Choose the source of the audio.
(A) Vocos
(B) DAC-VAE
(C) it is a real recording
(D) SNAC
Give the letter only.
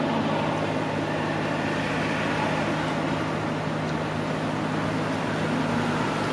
C